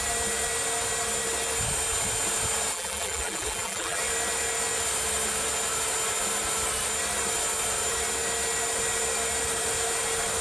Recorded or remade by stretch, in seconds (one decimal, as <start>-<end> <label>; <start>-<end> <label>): 0.0-2.7 recorded; 2.7-4.0 remade; 4.0-10.4 recorded